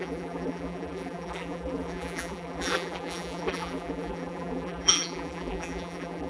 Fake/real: fake